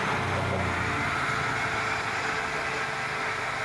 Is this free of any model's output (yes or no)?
yes